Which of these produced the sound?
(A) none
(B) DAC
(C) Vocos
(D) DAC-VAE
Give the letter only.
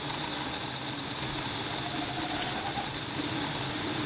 A